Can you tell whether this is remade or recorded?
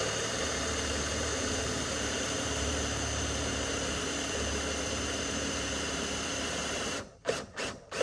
remade